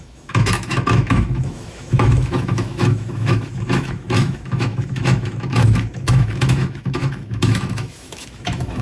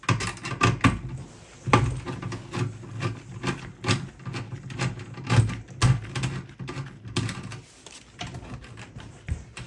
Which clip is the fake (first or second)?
first